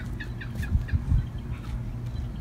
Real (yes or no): yes